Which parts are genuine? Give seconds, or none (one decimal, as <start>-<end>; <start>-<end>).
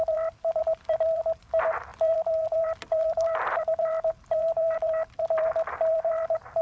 none